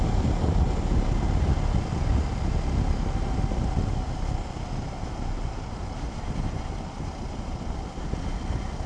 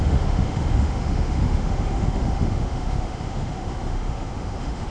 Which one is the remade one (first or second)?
second